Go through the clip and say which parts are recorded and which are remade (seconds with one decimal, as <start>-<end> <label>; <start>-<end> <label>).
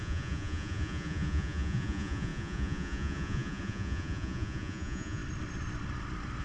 0.0-5.2 remade; 5.2-6.4 recorded